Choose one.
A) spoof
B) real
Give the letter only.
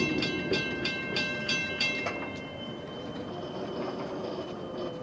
A